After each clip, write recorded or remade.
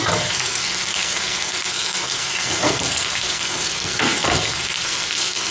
remade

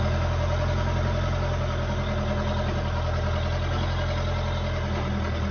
recorded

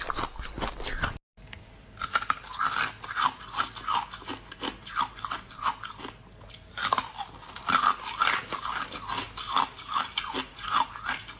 recorded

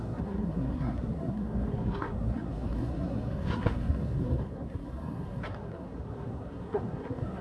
remade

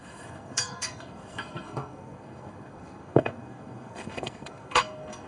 remade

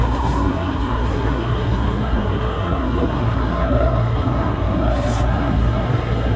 remade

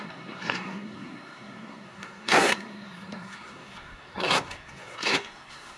remade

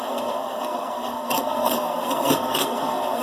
remade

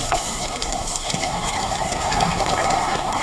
remade